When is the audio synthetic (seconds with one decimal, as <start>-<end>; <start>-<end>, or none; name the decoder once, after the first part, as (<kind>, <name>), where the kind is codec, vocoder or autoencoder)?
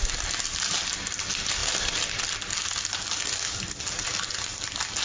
none